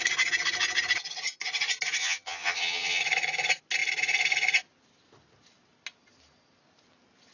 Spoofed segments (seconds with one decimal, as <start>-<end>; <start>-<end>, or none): 2.0-3.0